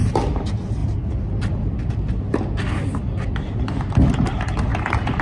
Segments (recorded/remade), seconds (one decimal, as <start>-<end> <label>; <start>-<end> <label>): 0.0-5.2 recorded